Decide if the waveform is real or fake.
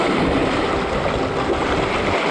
real